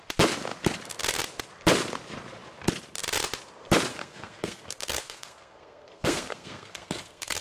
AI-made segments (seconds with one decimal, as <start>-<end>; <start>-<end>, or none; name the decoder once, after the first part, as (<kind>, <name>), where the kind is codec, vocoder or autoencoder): 3.9-7.4 (codec, SNAC)